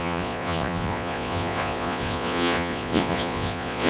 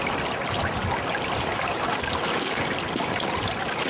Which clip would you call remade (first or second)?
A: first